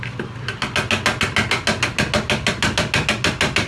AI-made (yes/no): no